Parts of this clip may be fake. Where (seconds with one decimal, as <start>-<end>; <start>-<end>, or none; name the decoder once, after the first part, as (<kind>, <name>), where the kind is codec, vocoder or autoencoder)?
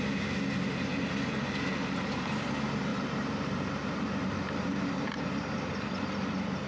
2.9-5.7 (vocoder, BigVGAN v2)